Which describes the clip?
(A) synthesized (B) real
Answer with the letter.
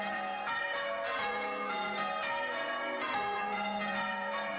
A